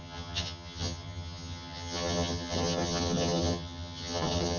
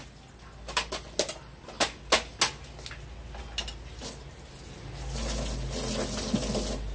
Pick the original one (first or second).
second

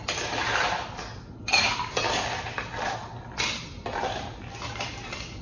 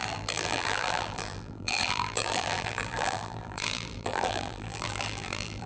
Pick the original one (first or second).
first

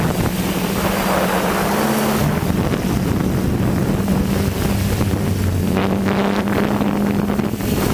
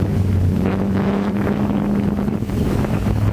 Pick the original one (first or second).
first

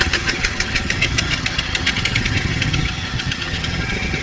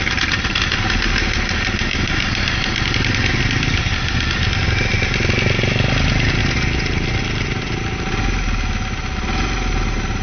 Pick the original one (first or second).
second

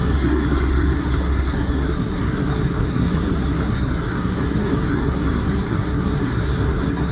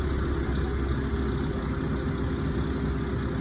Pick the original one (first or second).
second